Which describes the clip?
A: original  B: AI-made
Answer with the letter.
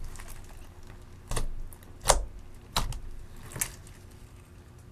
A